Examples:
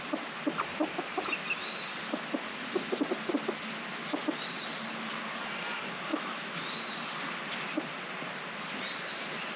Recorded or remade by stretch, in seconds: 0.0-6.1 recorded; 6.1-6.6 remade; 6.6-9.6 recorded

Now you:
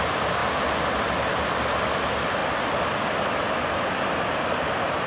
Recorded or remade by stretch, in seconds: 0.0-0.4 remade; 0.4-1.0 recorded; 1.0-2.4 remade; 2.4-3.0 recorded; 3.0-5.1 remade

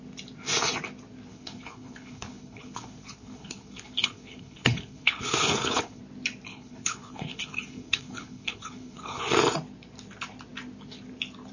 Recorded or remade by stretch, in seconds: 0.0-1.3 recorded; 1.3-6.0 remade; 6.0-6.5 recorded; 6.5-9.2 remade; 9.2-11.5 recorded

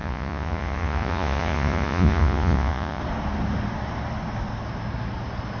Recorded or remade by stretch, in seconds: 0.0-3.0 remade; 3.0-5.6 recorded